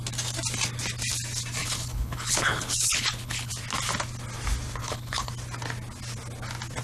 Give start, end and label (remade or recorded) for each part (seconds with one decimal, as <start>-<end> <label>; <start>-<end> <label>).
0.0-1.6 recorded; 1.6-3.5 remade; 3.5-4.8 recorded; 4.8-5.3 remade; 5.3-6.8 recorded